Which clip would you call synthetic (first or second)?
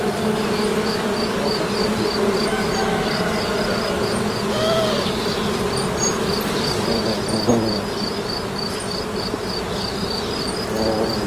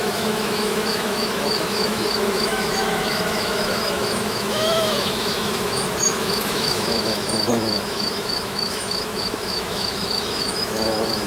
second